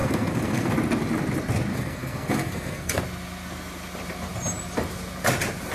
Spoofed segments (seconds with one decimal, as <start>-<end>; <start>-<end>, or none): 0.0-0.7; 1.7-3.0